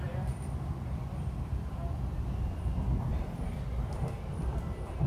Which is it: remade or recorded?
remade